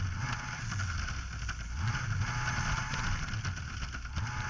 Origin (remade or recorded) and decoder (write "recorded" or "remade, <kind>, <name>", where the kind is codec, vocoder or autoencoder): recorded